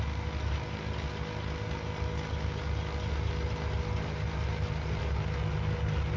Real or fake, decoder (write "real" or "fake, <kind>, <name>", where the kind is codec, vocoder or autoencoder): real